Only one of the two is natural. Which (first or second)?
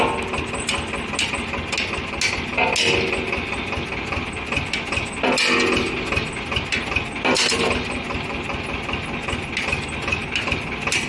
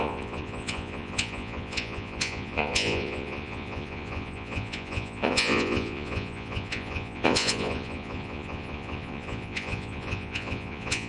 first